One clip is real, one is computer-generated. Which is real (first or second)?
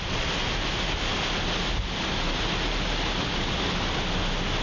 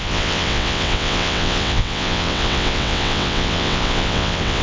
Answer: first